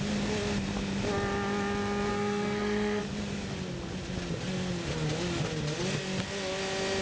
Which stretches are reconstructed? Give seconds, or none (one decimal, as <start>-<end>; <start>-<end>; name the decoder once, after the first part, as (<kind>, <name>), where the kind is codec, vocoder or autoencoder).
2.1-3.0 (codec, SNAC)

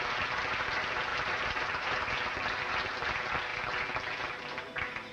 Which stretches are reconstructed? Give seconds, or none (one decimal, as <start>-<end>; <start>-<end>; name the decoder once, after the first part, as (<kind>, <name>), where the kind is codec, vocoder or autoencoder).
1.1-2.1 (vocoder, BigVGAN v2)